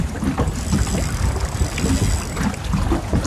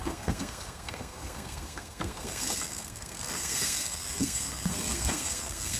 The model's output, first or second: second